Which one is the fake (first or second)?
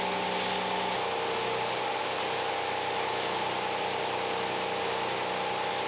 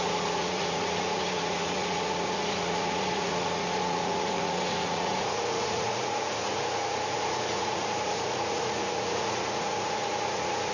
second